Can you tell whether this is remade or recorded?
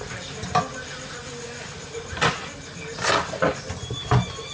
recorded